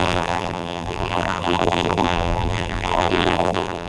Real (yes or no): no